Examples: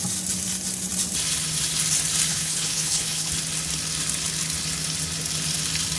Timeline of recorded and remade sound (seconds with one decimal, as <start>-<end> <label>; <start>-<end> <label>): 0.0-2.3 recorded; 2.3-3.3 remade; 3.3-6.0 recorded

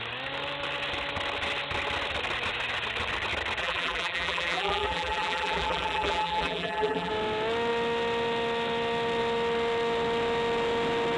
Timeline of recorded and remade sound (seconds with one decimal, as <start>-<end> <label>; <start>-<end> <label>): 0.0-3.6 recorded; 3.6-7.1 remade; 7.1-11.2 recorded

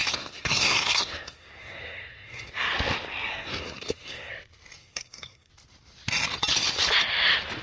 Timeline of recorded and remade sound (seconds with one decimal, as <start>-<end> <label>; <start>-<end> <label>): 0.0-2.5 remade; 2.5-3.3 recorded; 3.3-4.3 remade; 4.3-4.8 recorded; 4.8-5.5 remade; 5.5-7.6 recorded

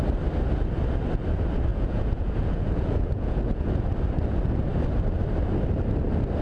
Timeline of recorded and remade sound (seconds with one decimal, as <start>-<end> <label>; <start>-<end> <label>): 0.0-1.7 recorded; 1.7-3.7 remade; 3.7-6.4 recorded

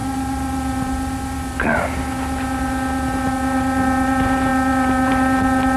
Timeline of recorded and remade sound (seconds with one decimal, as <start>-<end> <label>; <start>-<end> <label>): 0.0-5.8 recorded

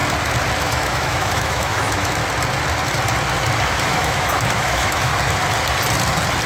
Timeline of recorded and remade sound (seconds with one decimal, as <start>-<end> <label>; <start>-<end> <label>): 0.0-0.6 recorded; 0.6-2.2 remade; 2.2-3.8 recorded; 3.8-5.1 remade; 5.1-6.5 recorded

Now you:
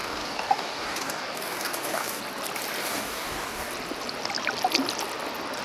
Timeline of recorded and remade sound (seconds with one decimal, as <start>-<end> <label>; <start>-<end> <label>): 0.0-2.2 remade; 2.2-2.8 recorded; 2.8-3.7 remade; 3.7-5.6 recorded